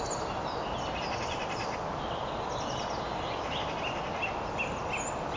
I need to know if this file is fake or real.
real